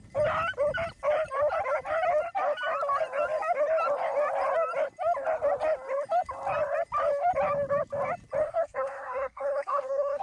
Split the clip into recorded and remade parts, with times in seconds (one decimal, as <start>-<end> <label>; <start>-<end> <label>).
0.0-8.4 recorded; 8.4-10.2 remade